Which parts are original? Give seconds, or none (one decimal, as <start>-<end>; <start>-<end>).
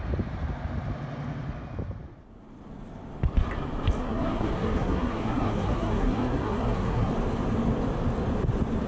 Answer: 0.0-4.0; 7.1-8.9